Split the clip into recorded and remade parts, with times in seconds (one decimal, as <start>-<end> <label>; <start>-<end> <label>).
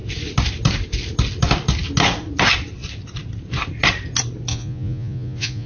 0.0-4.5 recorded; 4.5-5.7 remade